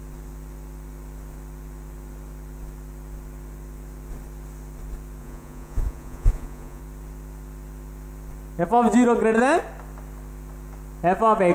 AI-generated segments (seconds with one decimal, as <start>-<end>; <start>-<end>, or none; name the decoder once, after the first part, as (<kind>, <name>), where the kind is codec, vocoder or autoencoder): 5.2-6.8 (vocoder, Vocos)